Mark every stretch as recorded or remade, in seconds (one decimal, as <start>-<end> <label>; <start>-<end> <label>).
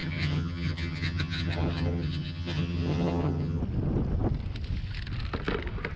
0.0-3.6 remade; 3.6-6.0 recorded